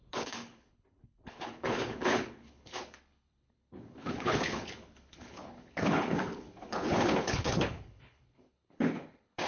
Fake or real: fake